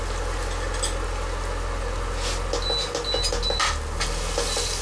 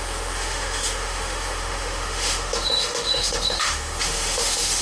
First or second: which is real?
first